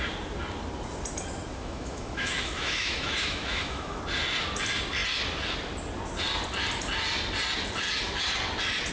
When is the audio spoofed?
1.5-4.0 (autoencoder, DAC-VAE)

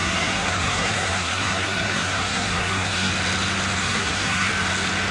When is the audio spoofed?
0.0-3.1 (codec, SNAC); 3.8-4.5

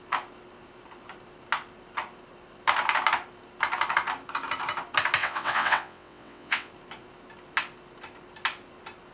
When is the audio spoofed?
5.2-6.7 (vocoder, WaveNeXt)

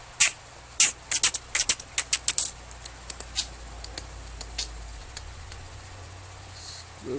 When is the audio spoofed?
5.0-6.6 (vocoder, Vocos)

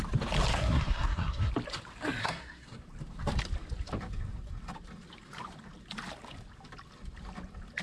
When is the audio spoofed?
0.5-1.5 (codec, SNAC); 2.2-2.8